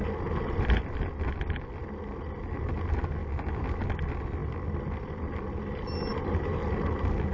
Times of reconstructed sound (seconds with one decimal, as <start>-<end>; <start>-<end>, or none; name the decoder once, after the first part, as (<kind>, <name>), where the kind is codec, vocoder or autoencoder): none